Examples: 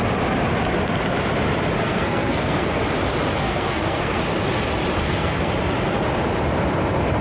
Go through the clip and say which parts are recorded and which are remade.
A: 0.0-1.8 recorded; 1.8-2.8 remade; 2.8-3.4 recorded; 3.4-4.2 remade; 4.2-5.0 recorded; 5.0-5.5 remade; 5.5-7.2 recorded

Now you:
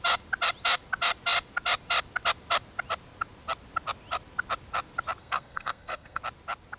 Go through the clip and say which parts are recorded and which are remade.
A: 0.0-5.2 recorded; 5.2-6.2 remade; 6.2-6.8 recorded